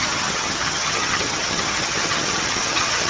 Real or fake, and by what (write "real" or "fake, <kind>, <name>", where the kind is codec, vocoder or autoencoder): fake, vocoder, HiFi-GAN